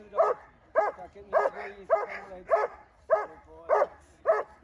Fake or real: real